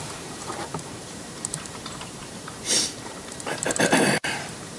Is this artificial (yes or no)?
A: yes